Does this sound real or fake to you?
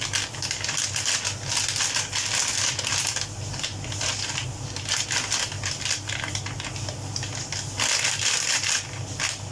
real